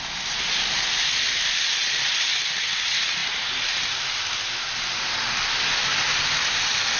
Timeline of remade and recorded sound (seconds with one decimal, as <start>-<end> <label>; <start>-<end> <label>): 0.0-7.0 recorded